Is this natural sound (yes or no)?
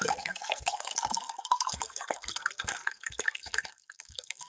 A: no